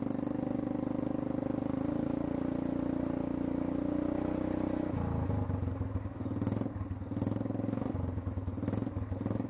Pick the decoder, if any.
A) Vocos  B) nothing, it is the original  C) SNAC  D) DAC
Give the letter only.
B